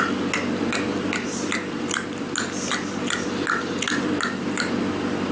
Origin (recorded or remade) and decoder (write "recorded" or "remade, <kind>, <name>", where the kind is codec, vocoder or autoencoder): recorded